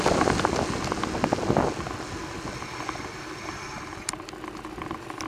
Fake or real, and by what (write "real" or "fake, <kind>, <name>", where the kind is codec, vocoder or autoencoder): real